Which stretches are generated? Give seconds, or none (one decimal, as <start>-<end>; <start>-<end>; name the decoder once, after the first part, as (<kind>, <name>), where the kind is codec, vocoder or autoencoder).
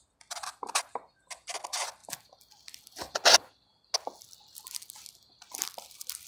none